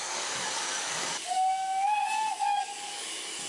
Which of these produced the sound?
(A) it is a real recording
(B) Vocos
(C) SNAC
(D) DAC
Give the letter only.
D